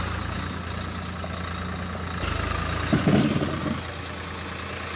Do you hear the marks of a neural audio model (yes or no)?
no